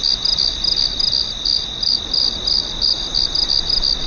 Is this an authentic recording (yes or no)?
yes